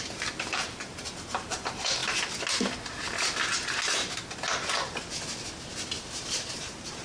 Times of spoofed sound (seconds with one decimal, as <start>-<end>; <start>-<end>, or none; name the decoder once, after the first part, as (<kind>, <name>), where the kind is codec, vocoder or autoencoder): 0.0-2.0 (vocoder, BigVGAN v2); 5.7-7.0